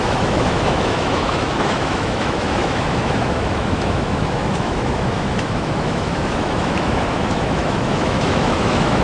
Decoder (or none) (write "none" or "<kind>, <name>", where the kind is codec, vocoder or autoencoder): autoencoder, DAC-VAE